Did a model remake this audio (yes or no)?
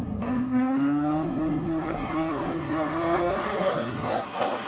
yes